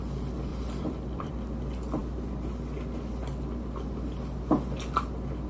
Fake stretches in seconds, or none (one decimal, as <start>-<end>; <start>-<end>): 0.5-1.3